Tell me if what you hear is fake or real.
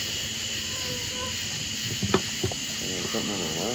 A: real